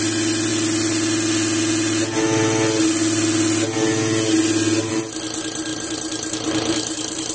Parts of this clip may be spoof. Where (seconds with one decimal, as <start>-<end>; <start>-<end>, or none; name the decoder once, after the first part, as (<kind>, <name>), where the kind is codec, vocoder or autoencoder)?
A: 5.7-7.3 (vocoder, BigVGAN v2)